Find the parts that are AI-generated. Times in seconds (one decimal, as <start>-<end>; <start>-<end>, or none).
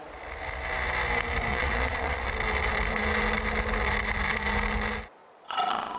1.5-2.3; 5.2-6.0